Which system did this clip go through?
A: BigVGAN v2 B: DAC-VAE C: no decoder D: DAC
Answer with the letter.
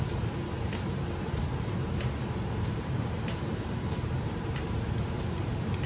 A